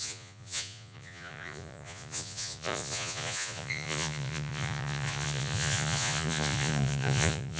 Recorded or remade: remade